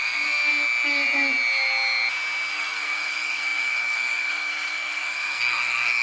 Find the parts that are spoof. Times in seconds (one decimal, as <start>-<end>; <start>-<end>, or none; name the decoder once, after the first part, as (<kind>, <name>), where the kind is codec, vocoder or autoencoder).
0.0-0.5 (codec, SNAC); 2.5-6.0